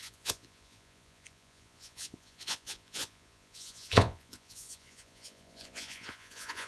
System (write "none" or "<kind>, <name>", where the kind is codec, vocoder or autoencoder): vocoder, Vocos